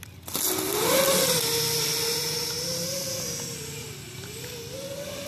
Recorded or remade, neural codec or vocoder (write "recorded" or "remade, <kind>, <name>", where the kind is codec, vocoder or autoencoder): recorded